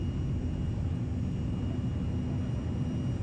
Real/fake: real